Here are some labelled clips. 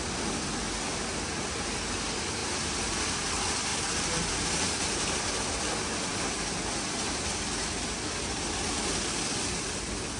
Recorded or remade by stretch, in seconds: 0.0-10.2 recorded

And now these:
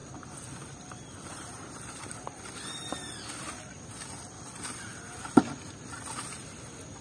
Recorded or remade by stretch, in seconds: 0.0-1.5 remade; 1.5-7.0 recorded

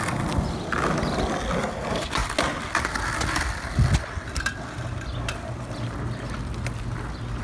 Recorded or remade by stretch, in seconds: 0.0-7.4 recorded

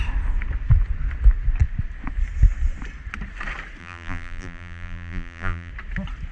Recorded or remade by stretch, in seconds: 0.0-3.8 recorded; 3.8-5.7 remade; 5.7-6.3 recorded

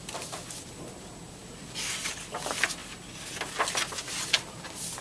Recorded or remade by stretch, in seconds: 0.0-5.0 recorded